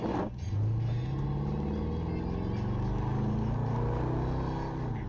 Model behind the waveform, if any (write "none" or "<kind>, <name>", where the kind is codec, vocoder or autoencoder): none